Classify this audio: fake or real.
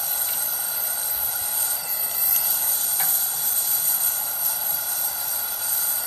real